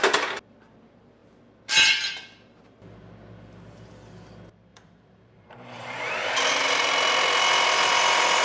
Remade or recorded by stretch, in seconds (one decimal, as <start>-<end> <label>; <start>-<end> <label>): 0.0-4.7 recorded; 4.7-6.1 remade; 6.1-8.4 recorded